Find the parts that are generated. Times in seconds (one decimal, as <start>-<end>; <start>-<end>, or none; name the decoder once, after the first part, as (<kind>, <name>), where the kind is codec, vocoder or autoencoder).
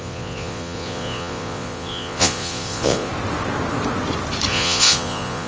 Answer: 0.0-3.1 (vocoder, Vocos); 4.5-5.5